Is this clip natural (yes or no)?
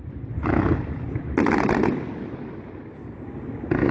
yes